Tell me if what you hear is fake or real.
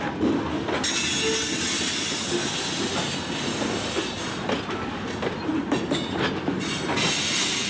real